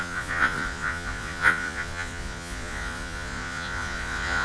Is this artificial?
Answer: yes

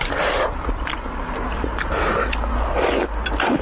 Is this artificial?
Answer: no